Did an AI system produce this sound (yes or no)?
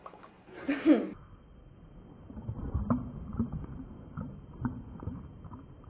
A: no